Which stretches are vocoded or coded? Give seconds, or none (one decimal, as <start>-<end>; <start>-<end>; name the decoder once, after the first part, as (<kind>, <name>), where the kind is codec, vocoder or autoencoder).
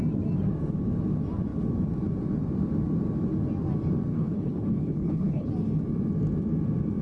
4.1-5.5 (codec, HILCodec)